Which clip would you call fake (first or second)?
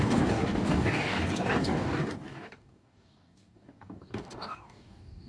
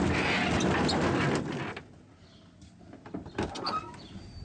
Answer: first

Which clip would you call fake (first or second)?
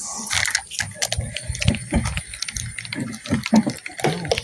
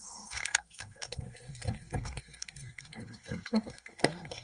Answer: second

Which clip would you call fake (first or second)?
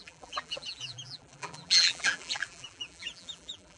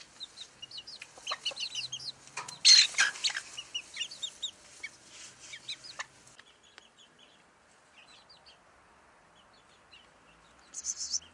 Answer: first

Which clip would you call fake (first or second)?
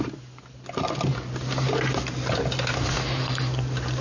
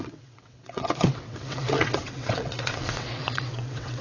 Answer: second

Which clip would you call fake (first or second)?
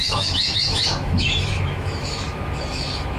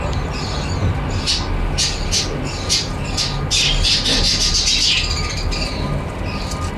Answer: first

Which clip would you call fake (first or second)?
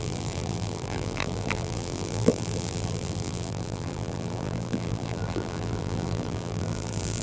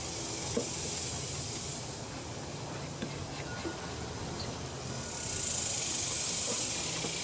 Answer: first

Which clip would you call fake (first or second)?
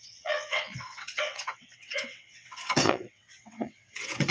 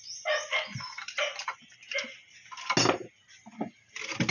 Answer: first